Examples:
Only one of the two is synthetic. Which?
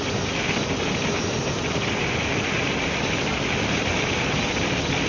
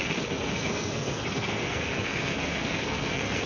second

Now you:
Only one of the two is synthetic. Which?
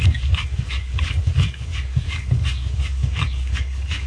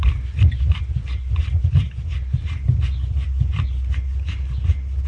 first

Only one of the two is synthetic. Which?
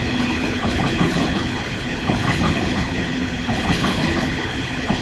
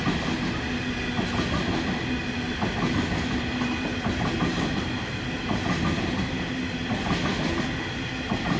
first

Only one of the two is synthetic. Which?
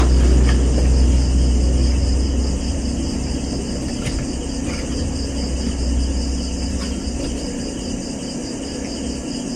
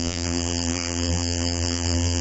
second